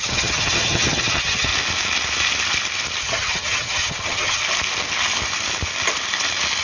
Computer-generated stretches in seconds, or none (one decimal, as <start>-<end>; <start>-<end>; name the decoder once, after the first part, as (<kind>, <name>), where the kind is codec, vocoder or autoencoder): 0.0-1.5 (vocoder, HiFi-GAN); 3.0-4.4